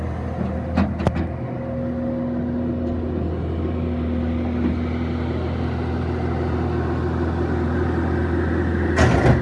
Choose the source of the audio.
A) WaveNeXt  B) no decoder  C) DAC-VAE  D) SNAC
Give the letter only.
B